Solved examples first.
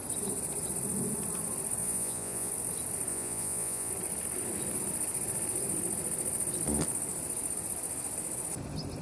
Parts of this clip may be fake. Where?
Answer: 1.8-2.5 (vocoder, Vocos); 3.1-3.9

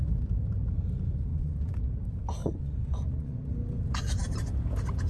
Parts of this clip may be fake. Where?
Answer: 1.3-1.8 (vocoder, Vocos); 2.4-3.4

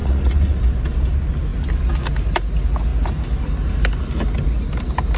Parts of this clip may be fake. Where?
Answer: 0.0-0.6 (vocoder, Vocos)